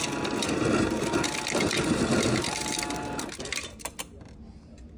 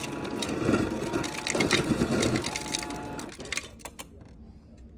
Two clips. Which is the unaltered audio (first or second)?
second